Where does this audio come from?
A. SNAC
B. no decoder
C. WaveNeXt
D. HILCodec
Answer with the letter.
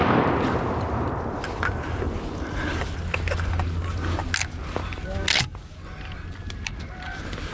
B